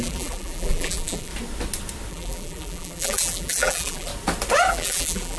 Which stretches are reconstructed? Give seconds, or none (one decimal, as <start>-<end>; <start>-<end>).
0.0-1.3; 2.1-4.1; 4.7-5.4